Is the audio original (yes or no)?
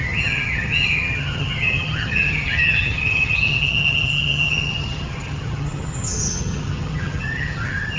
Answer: no